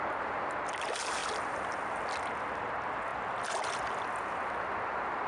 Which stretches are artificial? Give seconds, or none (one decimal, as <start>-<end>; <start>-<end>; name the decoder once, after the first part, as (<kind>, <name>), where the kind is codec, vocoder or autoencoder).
1.2-1.8 (vocoder, BigVGAN v2); 3.1-4.8